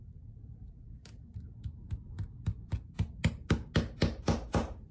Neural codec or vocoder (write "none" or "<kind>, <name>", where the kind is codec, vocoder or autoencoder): none